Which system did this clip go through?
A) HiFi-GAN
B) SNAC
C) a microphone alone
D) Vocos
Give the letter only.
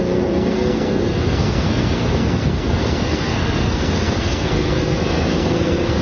B